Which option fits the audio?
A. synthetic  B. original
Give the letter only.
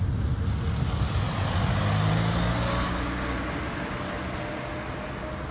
B